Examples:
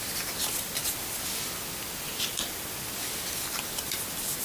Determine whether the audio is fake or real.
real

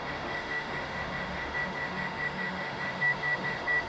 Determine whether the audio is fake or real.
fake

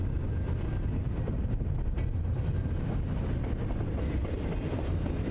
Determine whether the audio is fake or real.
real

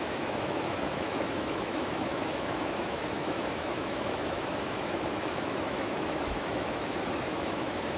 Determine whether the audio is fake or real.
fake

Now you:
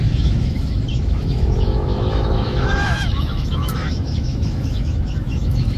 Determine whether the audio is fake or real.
fake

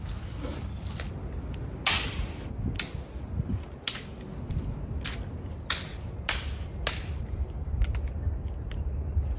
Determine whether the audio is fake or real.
real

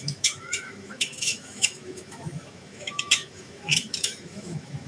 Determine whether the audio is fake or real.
fake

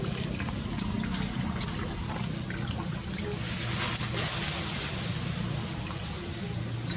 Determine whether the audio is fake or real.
real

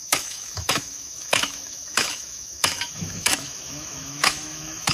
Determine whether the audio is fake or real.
fake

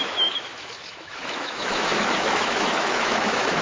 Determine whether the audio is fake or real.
fake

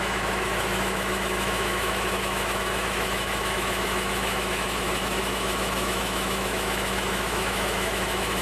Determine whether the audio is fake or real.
fake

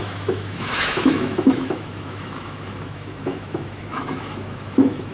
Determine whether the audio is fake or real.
fake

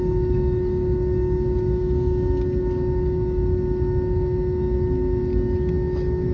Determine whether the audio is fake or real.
real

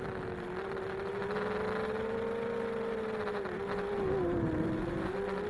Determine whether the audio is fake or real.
real